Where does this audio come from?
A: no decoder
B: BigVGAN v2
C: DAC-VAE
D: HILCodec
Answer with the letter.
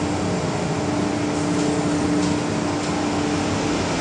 A